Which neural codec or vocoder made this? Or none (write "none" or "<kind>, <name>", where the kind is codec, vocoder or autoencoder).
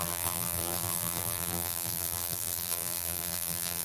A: vocoder, BigVGAN v2